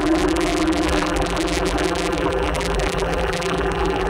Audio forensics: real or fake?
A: fake